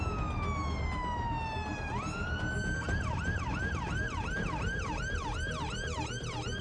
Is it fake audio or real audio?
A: real